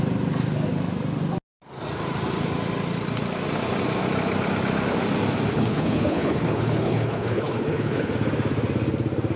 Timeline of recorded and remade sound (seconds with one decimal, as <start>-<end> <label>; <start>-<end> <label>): 0.0-5.5 recorded; 5.5-8.1 remade; 8.1-9.4 recorded